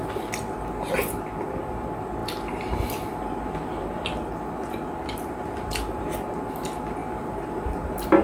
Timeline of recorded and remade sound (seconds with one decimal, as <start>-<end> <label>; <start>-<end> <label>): 0.0-8.2 recorded